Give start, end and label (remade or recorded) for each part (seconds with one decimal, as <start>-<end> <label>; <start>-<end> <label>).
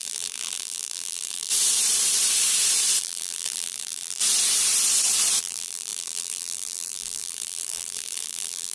0.0-1.5 remade; 1.5-3.0 recorded; 3.0-4.2 remade; 4.2-5.4 recorded; 5.4-8.7 remade